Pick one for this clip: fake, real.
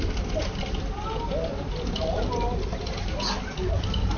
real